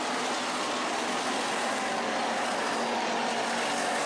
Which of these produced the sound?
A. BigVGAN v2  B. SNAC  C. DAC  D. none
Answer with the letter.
D